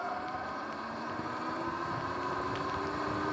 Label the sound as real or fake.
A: real